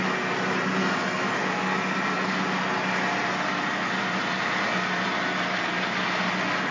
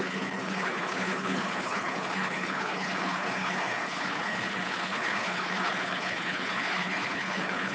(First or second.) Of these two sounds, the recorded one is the first